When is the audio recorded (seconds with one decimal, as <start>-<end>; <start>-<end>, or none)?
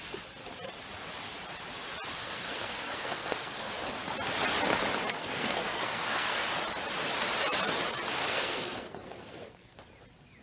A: 0.0-2.2; 3.7-5.2; 6.5-8.2; 9.8-10.4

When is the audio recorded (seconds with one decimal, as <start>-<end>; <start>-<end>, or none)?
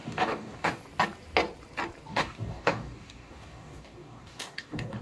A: 0.8-2.1